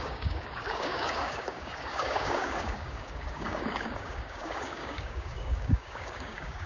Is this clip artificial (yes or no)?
yes